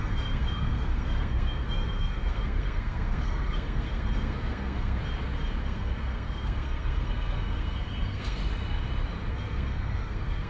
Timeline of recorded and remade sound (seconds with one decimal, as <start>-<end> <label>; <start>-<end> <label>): 0.0-5.0 remade; 5.0-5.6 recorded; 5.6-8.4 remade; 8.4-9.3 recorded; 9.3-10.5 remade